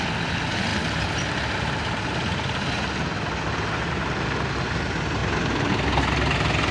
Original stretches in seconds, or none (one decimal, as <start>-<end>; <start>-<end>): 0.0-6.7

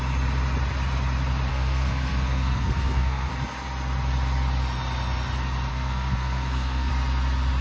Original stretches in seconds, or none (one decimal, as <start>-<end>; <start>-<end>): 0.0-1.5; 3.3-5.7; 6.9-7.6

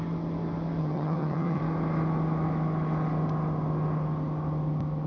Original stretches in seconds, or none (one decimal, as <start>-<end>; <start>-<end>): 0.0-0.8; 1.6-5.1